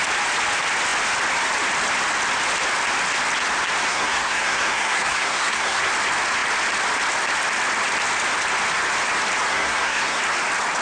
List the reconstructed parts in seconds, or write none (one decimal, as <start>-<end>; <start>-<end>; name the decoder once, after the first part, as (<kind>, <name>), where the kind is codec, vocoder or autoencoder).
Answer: 3.9-5.9 (codec, SNAC); 9.5-10.2